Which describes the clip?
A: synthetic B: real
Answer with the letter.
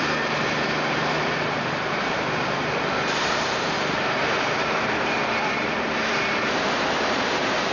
A